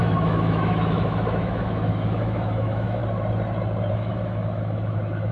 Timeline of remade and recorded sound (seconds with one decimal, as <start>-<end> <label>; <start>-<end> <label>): 0.0-3.0 remade; 3.0-3.9 recorded; 3.9-5.3 remade